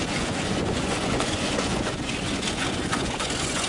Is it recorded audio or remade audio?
remade